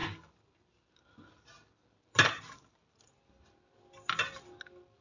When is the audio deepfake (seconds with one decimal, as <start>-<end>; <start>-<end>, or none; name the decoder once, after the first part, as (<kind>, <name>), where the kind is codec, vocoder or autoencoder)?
none